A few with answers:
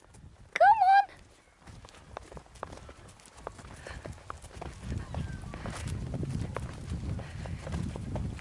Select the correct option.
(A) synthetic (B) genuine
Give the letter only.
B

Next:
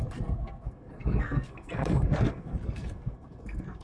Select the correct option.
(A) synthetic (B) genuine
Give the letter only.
A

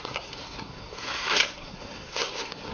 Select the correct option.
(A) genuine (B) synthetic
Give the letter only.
B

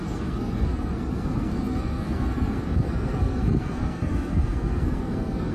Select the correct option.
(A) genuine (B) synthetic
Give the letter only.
B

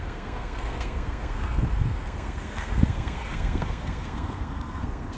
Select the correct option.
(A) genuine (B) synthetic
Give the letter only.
B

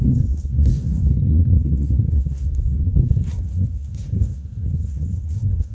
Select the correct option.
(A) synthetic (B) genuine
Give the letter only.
A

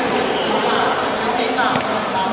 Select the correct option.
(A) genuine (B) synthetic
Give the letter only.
A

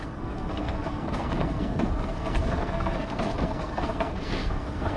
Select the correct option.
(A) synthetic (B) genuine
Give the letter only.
A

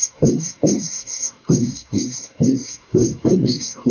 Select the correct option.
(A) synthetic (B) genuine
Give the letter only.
A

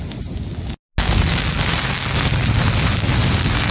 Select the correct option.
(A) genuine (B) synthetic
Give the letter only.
A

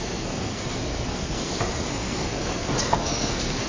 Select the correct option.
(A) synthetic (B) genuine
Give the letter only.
A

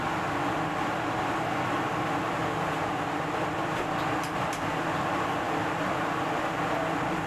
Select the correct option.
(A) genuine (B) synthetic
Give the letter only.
A